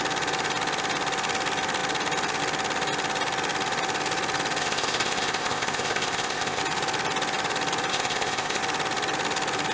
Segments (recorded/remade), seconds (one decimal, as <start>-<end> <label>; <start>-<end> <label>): 0.0-4.6 recorded; 4.6-6.6 remade; 6.6-7.9 recorded; 7.9-8.6 remade; 8.6-9.7 recorded